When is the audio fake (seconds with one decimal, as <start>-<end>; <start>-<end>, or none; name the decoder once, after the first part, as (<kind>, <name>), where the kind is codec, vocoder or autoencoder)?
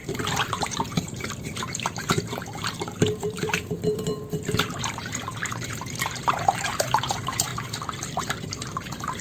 0.0-7.5 (vocoder, BigVGAN v2); 8.2-9.2